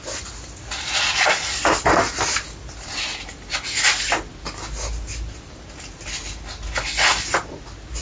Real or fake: real